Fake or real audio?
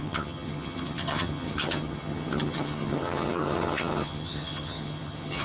fake